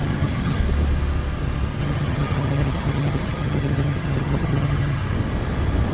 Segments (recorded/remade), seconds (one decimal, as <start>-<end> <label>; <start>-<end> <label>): 0.0-0.6 remade; 0.6-1.8 recorded; 1.8-5.0 remade; 5.0-5.9 recorded